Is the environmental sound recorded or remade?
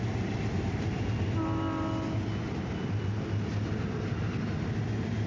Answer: recorded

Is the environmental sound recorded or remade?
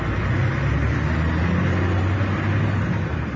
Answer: recorded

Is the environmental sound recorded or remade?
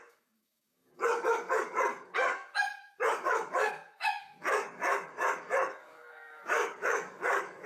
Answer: remade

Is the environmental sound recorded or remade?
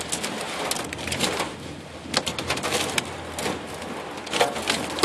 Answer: recorded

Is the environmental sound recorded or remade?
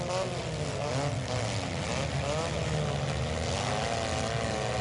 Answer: recorded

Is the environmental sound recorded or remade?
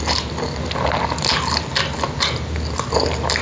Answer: recorded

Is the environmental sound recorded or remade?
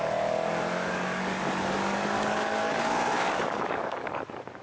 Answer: remade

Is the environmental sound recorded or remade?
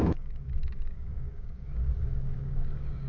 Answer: remade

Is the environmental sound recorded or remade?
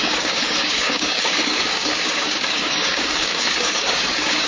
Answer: remade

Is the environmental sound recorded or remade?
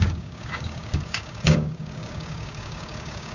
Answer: remade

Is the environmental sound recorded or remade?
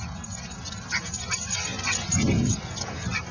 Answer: recorded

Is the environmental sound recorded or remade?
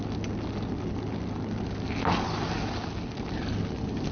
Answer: recorded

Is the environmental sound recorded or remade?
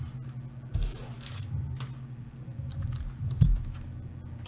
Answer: recorded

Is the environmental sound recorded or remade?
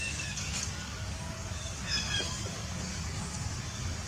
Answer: remade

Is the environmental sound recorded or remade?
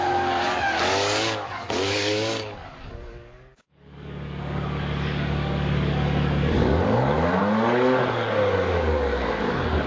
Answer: remade